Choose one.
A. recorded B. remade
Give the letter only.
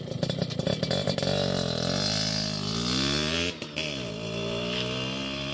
A